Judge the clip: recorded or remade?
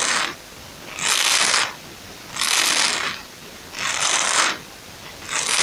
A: recorded